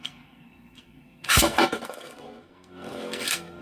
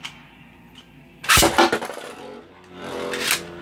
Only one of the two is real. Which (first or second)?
second